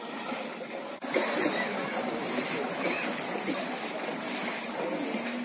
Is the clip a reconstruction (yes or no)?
no